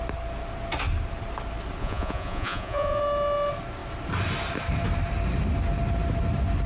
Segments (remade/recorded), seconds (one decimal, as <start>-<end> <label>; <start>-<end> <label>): 0.0-1.8 recorded; 1.8-3.0 remade; 3.0-6.7 recorded